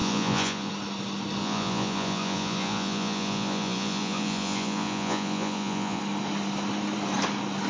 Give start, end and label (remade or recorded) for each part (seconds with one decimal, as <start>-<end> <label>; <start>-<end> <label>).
0.0-0.7 remade; 0.7-1.4 recorded; 1.4-6.0 remade; 6.0-7.7 recorded